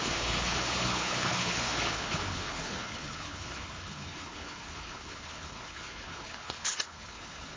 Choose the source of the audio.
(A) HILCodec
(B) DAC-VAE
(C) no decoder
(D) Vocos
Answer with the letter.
A